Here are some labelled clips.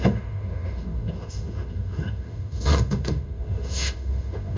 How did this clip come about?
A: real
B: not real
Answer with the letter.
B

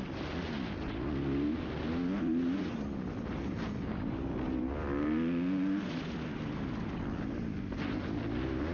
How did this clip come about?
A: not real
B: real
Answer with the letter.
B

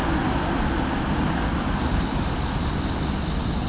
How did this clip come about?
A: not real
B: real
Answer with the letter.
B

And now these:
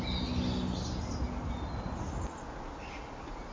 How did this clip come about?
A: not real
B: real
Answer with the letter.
B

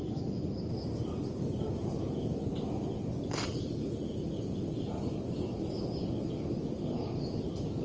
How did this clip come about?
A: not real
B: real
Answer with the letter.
B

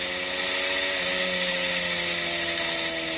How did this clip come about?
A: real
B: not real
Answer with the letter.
A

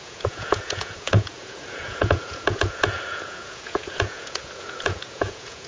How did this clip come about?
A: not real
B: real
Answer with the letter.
A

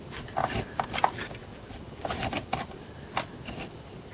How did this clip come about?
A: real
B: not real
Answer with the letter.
A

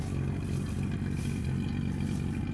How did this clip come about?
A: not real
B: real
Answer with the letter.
B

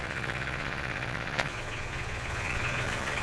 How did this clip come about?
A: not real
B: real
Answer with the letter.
A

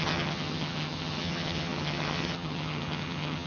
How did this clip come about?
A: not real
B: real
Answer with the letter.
A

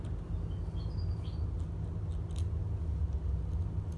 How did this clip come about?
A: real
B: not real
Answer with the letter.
A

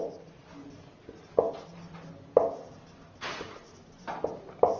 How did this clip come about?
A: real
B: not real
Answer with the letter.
A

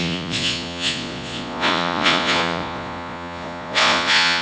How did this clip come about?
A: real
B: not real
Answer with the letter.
B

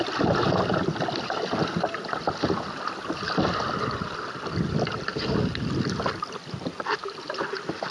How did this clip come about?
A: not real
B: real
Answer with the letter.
B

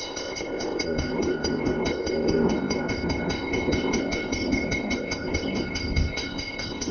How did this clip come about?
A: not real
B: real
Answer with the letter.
A